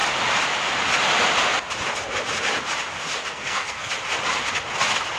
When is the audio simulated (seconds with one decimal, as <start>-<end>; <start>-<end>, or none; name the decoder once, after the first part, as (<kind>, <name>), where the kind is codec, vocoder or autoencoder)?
3.3-3.9 (codec, SNAC)